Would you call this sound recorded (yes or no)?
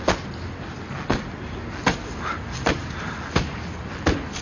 yes